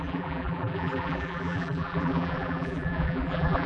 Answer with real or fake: fake